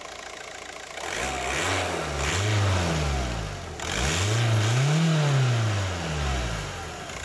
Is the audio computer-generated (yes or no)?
no